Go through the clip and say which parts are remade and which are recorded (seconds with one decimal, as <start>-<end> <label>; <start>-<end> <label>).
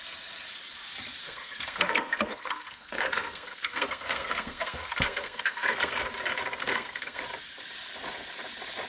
0.0-1.2 recorded; 1.2-6.0 remade; 6.0-6.6 recorded; 6.6-7.2 remade; 7.2-8.9 recorded